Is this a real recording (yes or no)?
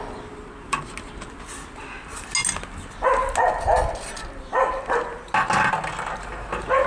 yes